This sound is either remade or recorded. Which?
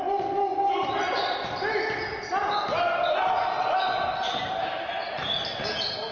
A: recorded